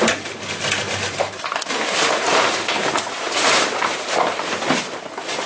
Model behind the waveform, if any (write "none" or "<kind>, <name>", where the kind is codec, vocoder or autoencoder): none